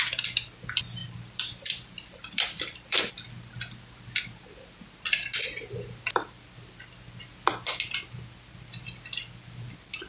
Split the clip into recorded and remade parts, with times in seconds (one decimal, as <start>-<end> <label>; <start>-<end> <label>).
0.0-1.0 recorded; 1.0-3.1 remade; 3.1-10.1 recorded